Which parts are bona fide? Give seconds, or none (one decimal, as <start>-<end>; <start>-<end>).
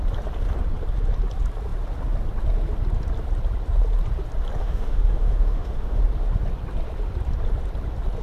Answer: 0.0-4.6; 6.0-8.2